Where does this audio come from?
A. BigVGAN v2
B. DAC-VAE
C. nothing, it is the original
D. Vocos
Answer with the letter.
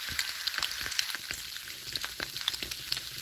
C